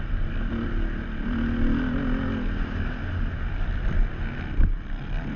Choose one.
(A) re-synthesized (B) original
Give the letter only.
B